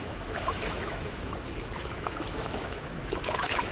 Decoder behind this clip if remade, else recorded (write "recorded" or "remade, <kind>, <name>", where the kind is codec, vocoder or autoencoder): remade, autoencoder, DAC-VAE